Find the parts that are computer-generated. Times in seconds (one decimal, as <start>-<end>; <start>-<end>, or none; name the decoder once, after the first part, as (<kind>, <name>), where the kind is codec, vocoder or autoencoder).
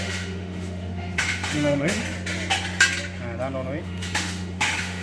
0.0-2.0 (autoencoder, DAC-VAE); 3.8-5.0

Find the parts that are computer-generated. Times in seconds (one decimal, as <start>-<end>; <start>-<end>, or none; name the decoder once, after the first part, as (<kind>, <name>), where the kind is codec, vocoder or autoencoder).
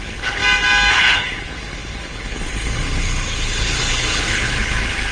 0.0-0.4 (codec, HILCodec); 0.9-5.1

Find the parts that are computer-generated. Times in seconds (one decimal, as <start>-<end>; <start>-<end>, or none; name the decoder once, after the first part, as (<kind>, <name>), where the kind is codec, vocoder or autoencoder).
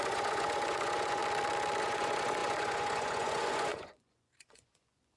0.0-1.2 (vocoder, Vocos); 1.8-5.2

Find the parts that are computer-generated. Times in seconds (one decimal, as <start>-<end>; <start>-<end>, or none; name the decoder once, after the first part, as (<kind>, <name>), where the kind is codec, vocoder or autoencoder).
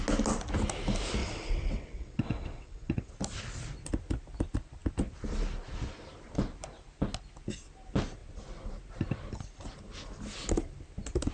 1.2-3.1 (vocoder, WaveNeXt)